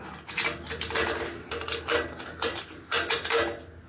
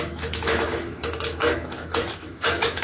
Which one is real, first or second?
first